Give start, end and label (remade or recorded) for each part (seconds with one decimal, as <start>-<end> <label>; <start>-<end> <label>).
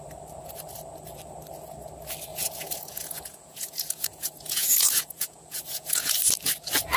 0.0-2.3 recorded; 2.3-6.1 remade; 6.1-7.0 recorded